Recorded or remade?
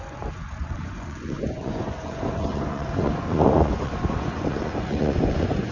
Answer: remade